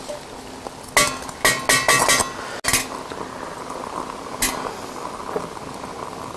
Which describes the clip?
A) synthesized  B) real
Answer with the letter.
B